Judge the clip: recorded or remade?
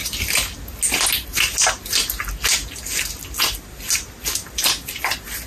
recorded